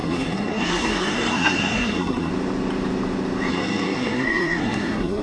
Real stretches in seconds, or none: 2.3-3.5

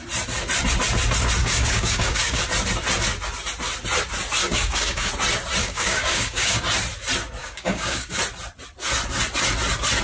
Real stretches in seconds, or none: 0.0-1.4; 2.4-4.4; 5.1-5.6; 6.6-7.4; 8.2-10.0

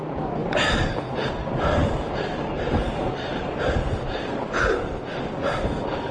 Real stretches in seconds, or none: 0.0-0.4; 1.3-1.8; 5.2-6.1

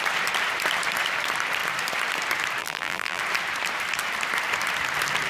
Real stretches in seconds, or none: 0.0-2.6; 3.2-5.3